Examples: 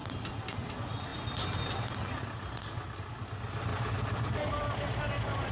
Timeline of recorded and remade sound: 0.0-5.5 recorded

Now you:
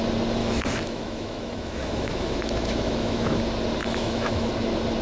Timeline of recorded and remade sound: 0.0-0.4 recorded; 0.4-3.4 remade; 3.4-3.8 recorded; 3.8-4.5 remade; 4.5-5.0 recorded